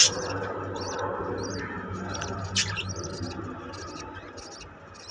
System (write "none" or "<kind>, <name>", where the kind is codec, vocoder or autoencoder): none